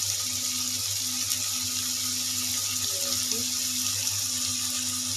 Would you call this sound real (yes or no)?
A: yes